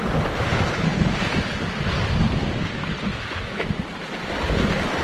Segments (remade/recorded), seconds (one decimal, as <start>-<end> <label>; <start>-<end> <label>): 0.0-3.1 recorded; 3.1-3.8 remade; 3.8-5.0 recorded